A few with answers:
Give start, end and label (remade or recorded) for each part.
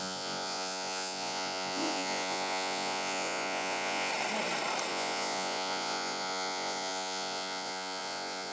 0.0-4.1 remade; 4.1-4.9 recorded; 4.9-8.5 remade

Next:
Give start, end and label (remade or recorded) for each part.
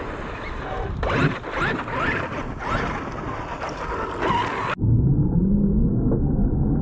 0.0-6.8 recorded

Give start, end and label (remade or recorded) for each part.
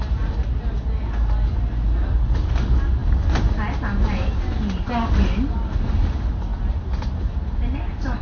0.0-8.2 recorded